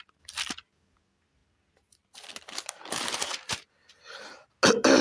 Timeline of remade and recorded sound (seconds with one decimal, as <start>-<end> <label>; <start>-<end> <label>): 0.0-5.0 recorded